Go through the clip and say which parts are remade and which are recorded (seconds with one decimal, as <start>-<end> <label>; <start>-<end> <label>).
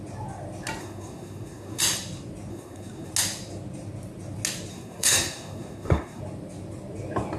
0.0-0.8 recorded; 0.8-1.8 remade; 1.8-2.5 recorded; 2.5-3.1 remade; 3.1-4.7 recorded; 4.7-6.2 remade; 6.2-7.4 recorded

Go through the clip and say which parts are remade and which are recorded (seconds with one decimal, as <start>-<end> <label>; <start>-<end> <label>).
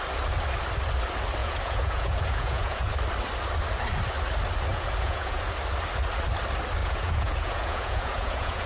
0.0-1.4 recorded; 1.4-2.9 remade; 2.9-4.7 recorded; 4.7-5.4 remade; 5.4-6.8 recorded; 6.8-8.7 remade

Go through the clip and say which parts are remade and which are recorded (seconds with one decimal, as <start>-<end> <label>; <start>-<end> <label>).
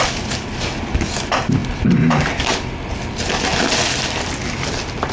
0.0-5.1 recorded